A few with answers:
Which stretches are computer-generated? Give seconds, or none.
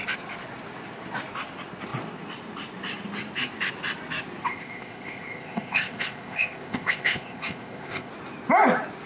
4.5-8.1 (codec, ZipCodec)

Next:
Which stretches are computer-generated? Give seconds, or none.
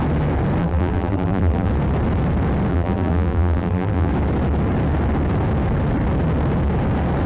0.6-1.7 (vocoder, BigVGAN v2); 2.7-4.1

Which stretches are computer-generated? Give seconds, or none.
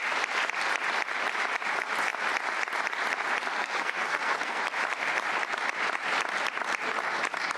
3.6-4.6 (codec, SNAC)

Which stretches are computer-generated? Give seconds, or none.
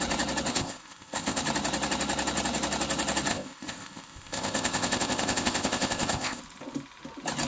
0.5-1.4 (codec, ZipCodec); 3.3-6.4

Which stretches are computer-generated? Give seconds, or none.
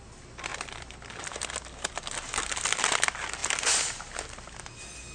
none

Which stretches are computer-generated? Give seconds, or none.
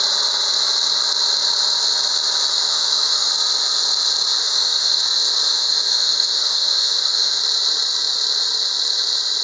2.5-3.3 (autoencoder, DAC-VAE); 4.4-5.0; 5.5-7.4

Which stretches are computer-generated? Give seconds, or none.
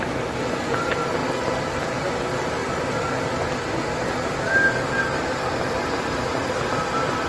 none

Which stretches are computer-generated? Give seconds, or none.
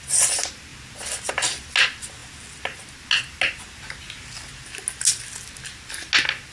none